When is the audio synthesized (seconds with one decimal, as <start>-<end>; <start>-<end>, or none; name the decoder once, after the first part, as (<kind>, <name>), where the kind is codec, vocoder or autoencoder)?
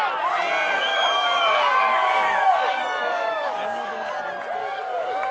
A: 0.9-4.1 (codec, DAC); 4.6-5.3